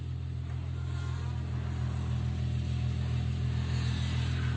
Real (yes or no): yes